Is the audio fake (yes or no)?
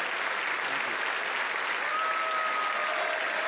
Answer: no